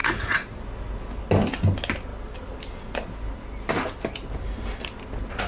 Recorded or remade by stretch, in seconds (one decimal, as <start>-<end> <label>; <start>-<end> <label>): 0.0-0.6 remade; 0.6-5.5 recorded